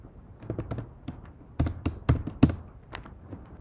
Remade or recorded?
recorded